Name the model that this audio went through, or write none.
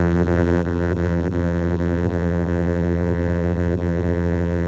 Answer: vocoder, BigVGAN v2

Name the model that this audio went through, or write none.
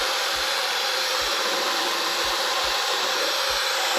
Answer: vocoder, BigVGAN v2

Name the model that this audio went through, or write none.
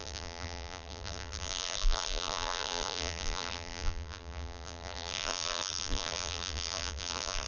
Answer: vocoder, BigVGAN v2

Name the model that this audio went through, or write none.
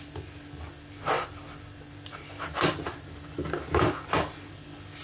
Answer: none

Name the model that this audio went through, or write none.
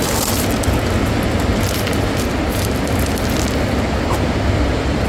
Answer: none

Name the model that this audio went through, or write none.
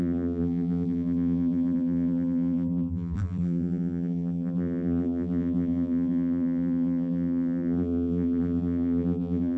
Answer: vocoder, BigVGAN v2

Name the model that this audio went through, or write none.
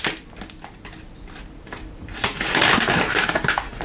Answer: none